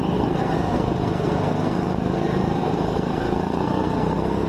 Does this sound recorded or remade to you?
remade